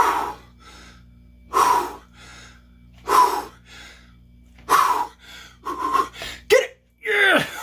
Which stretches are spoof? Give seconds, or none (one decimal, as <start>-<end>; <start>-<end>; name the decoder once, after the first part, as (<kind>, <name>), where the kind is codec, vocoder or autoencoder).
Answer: none